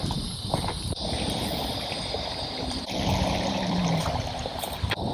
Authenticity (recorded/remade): remade